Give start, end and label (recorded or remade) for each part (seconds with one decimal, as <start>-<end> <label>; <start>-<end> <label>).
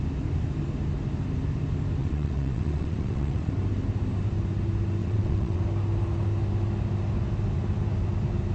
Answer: 0.0-2.0 recorded; 2.0-3.5 remade; 3.5-5.0 recorded; 5.0-5.6 remade; 5.6-8.5 recorded